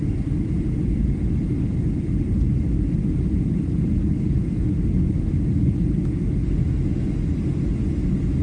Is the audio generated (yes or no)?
no